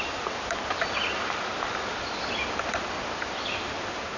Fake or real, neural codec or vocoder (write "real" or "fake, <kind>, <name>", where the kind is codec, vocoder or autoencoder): real